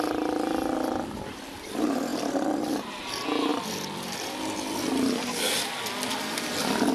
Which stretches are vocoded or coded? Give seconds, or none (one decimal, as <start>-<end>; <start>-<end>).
none